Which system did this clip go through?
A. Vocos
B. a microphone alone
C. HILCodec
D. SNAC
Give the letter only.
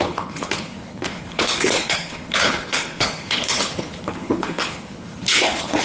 C